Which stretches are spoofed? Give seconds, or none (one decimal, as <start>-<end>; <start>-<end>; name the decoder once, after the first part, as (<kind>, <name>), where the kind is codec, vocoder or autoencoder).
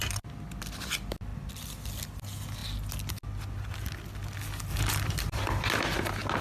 4.7-5.7 (vocoder, BigVGAN v2)